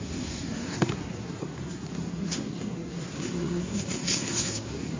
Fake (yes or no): yes